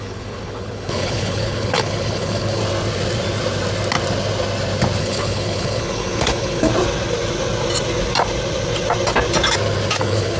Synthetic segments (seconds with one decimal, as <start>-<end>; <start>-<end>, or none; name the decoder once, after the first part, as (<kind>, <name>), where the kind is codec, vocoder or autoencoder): 0.0-2.6 (codec, HILCodec); 5.0-6.7; 10.0-10.4